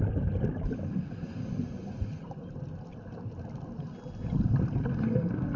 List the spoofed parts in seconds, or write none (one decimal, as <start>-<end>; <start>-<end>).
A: 4.9-5.6